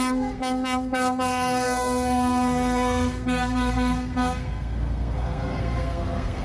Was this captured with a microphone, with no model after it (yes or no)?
no